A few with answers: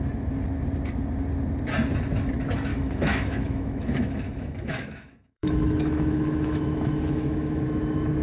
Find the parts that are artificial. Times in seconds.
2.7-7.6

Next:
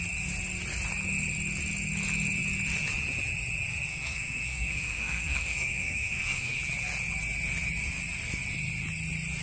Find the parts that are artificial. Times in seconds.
3.9-6.6